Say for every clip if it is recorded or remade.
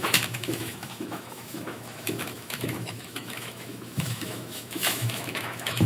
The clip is remade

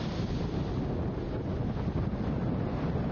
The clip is recorded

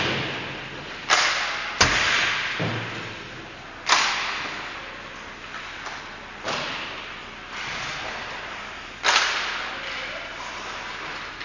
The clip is recorded